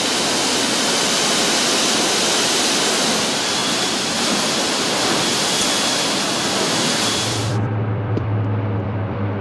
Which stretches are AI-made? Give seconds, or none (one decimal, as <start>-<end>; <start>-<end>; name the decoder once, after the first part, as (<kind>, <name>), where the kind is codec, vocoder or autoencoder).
0.0-9.4 (vocoder, BigVGAN v2)